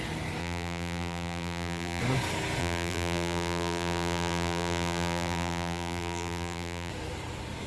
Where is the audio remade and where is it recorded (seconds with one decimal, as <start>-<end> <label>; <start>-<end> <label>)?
0.0-0.4 recorded; 0.4-2.0 remade; 2.0-2.6 recorded; 2.6-6.9 remade; 6.9-7.7 recorded